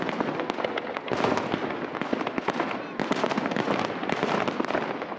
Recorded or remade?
recorded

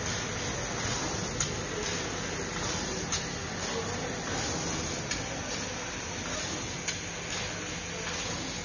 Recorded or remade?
recorded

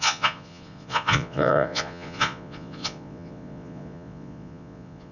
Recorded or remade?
remade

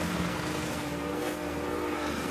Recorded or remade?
remade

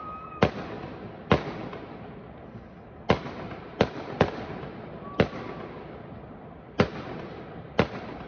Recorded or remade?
recorded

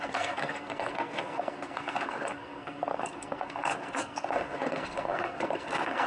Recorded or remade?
remade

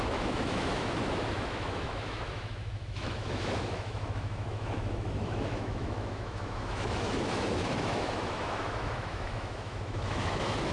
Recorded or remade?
remade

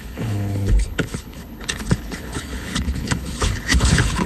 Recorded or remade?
remade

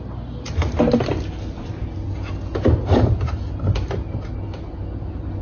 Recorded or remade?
recorded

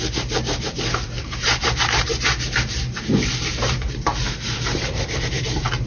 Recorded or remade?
remade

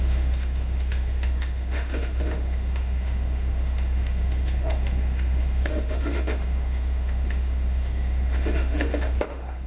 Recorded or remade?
remade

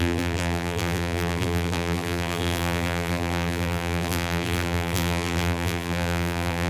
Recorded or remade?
remade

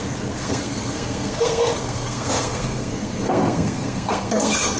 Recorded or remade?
remade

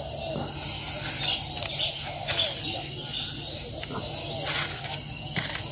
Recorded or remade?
recorded